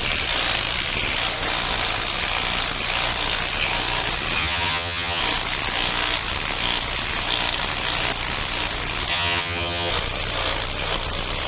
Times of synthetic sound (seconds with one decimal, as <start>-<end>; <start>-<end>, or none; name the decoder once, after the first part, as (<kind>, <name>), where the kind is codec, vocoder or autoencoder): 4.4-5.2 (vocoder, HiFi-GAN); 9.1-9.9